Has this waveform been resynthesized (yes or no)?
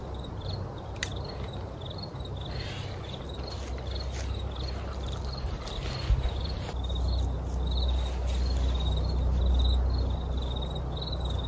no